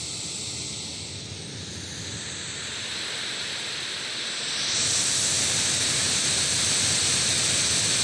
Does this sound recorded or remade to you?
recorded